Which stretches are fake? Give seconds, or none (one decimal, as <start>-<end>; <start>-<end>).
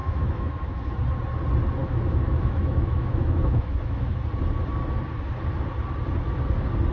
0.0-0.9; 1.8-4.2